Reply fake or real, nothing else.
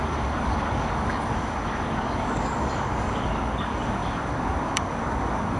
fake